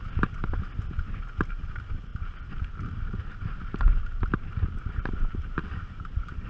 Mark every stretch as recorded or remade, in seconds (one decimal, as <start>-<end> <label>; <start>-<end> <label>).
0.0-1.6 recorded; 1.6-2.1 remade; 2.1-4.9 recorded; 4.9-6.5 remade